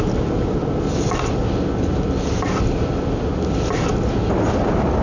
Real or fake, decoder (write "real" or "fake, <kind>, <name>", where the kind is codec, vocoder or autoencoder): real